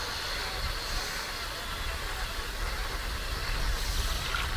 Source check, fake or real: real